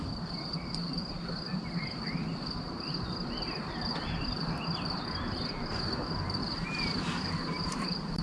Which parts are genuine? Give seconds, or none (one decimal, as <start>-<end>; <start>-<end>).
none